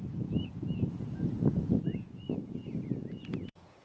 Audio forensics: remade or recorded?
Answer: remade